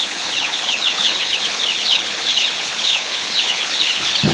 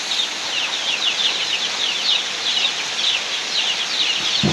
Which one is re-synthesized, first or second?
first